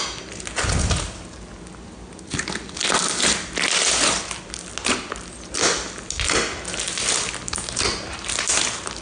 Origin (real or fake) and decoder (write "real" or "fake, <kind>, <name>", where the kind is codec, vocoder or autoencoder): real